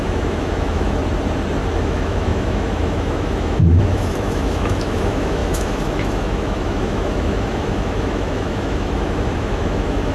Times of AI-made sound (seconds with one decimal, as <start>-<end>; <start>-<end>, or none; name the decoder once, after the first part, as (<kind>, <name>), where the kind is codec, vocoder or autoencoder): 0.0-1.0 (autoencoder, DAC-VAE); 1.8-10.1

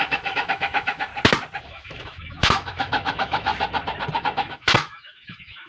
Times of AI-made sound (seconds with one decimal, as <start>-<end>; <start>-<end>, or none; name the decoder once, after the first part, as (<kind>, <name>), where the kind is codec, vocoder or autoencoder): 0.0-1.1 (autoencoder, DAC-VAE); 1.6-3.5; 4.2-5.7

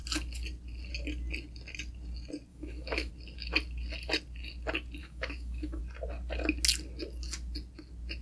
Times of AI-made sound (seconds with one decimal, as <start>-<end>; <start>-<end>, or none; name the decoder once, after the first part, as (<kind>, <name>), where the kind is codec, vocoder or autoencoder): 2.5-3.1 (autoencoder, DAC-VAE); 5.0-5.8

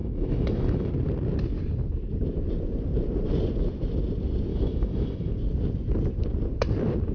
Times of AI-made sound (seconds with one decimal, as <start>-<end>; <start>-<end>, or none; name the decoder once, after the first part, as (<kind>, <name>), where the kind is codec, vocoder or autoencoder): 0.0-0.9 (autoencoder, DAC-VAE); 4.5-5.3

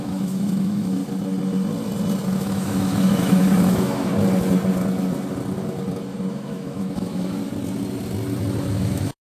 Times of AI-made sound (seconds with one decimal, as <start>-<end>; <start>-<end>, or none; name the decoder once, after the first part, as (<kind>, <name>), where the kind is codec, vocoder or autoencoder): 0.0-1.0 (autoencoder, DAC-VAE); 2.4-4.1; 6.3-7.4; 8.7-9.3

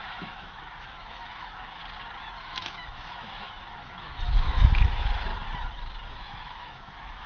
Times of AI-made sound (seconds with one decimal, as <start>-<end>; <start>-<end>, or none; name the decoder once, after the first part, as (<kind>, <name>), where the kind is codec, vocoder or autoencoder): 0.0-1.8 (autoencoder, DAC-VAE); 2.4-5.3; 6.1-7.3

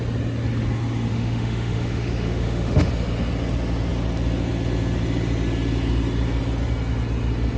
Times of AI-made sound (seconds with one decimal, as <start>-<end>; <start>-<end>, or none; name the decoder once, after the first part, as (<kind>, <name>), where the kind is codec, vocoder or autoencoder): 1.1-2.9 (autoencoder, DAC-VAE)

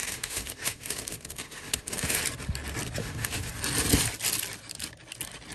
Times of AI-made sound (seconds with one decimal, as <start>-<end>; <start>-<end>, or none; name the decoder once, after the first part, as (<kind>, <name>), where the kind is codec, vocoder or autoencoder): 0.0-2.2 (autoencoder, DAC-VAE); 3.0-3.5